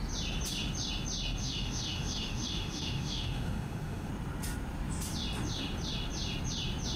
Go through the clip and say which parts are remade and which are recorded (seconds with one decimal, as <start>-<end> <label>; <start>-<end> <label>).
0.0-1.4 recorded; 1.4-4.1 remade; 4.1-7.0 recorded